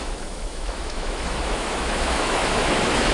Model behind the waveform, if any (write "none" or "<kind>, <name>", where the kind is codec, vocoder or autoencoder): autoencoder, DAC-VAE